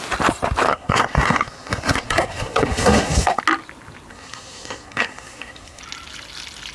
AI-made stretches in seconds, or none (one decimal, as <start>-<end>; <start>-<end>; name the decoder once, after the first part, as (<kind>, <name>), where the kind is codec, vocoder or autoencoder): 0.7-3.4 (codec, SNAC); 4.1-5.8

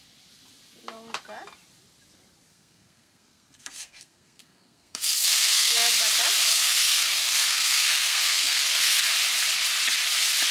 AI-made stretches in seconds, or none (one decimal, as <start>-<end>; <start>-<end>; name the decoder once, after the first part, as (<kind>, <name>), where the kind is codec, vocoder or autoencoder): 2.5-5.9 (codec, SNAC); 6.5-9.0

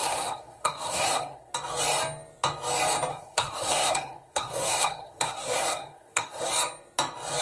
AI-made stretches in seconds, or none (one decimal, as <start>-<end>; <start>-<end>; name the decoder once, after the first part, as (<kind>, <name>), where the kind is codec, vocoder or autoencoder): 0.0-1.5 (codec, SNAC); 3.1-6.5

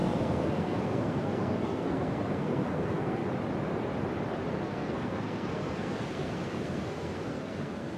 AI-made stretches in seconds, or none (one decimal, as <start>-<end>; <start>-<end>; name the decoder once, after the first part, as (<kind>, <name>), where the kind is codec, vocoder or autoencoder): 0.0-3.2 (codec, SNAC); 4.5-8.0

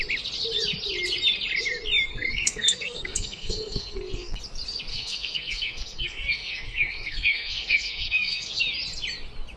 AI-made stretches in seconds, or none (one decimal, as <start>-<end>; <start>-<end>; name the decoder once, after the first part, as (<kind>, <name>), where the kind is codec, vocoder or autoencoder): 2.1-4.4 (codec, SNAC); 4.9-8.6

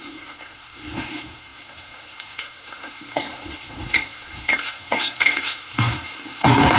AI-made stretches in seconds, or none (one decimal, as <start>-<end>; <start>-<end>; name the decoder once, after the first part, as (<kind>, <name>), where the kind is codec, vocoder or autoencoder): 0.0-6.8 (codec, SNAC)

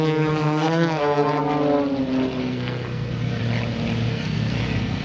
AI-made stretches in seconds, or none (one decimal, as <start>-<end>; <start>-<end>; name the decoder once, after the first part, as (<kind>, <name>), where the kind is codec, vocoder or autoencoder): 0.0-1.4 (codec, SNAC); 2.4-3.4; 4.1-5.0

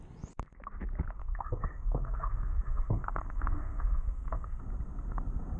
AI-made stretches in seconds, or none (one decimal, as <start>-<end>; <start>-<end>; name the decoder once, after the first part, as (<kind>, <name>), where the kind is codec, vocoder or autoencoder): 1.2-4.6 (codec, SNAC)